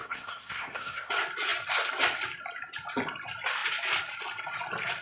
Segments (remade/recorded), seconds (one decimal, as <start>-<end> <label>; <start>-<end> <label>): 0.0-1.1 remade; 1.1-5.0 recorded